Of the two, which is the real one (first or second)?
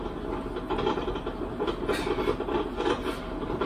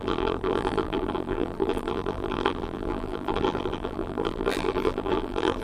first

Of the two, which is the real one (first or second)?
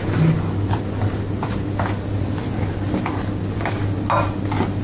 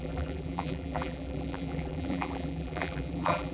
first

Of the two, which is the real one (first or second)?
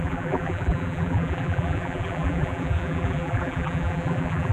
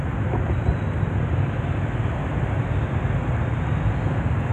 second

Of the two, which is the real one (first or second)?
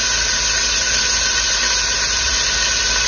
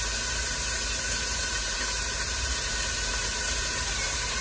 first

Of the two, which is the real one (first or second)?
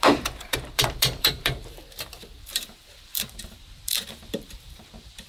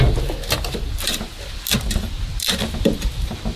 second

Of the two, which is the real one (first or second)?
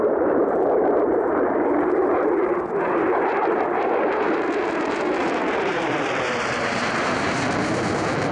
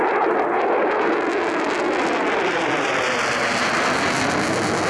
second